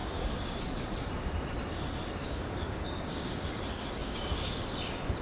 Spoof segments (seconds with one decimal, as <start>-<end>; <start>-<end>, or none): 0.0-0.6; 2.2-3.4; 4.0-4.7